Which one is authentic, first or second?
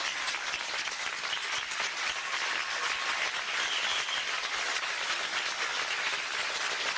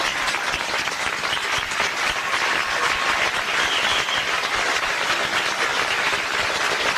second